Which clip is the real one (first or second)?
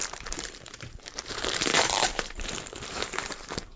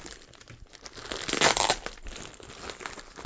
second